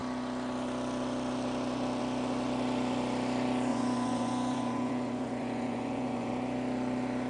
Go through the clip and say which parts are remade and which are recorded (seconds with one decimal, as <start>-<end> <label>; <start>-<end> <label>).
0.0-3.7 recorded; 3.7-6.3 remade; 6.3-7.3 recorded